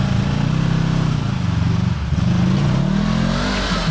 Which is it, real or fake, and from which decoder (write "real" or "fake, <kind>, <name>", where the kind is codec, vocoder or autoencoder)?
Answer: real